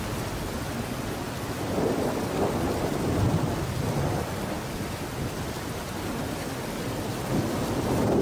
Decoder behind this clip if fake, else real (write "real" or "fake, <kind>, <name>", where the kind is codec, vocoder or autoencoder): fake, vocoder, BigVGAN v2